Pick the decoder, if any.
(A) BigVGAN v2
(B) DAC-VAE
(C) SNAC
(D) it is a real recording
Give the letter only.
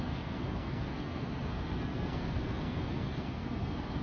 C